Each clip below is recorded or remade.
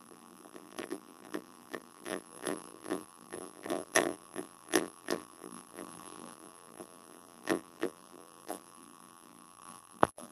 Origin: remade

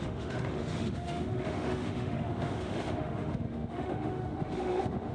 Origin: remade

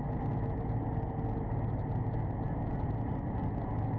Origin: recorded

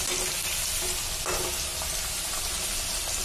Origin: recorded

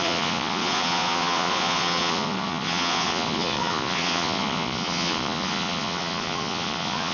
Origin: remade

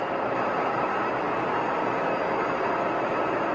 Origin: recorded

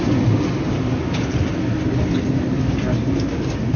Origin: recorded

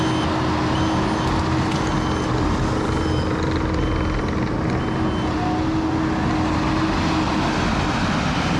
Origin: recorded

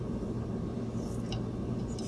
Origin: recorded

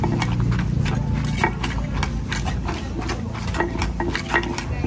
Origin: recorded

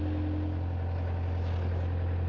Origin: recorded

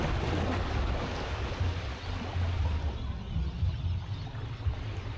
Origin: recorded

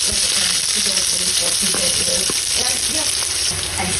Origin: recorded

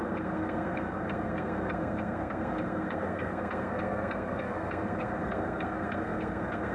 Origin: remade